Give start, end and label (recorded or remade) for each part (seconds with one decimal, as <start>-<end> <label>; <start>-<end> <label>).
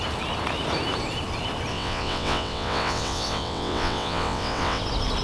0.0-1.7 recorded; 1.7-4.8 remade; 4.8-5.2 recorded